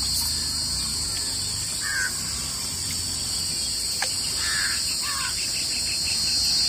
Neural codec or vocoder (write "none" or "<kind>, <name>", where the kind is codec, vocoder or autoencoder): none